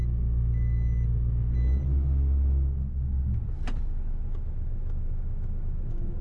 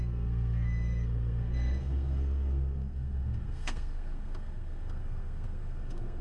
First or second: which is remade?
second